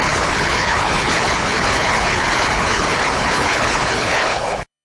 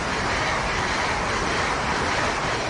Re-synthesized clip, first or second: first